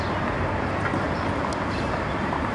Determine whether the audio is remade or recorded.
recorded